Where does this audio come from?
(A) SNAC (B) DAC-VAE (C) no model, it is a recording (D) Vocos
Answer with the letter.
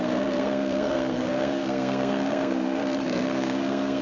A